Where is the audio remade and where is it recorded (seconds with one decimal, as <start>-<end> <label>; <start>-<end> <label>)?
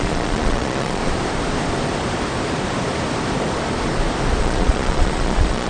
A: 0.0-1.0 remade; 1.0-4.4 recorded; 4.4-5.7 remade